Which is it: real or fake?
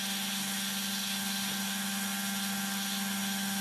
real